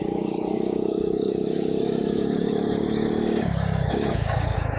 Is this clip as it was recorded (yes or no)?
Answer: no